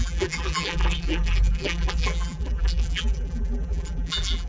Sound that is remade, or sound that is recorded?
remade